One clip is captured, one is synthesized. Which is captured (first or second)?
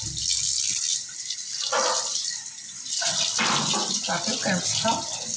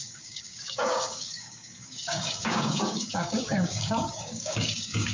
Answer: first